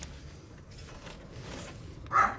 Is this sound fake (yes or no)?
no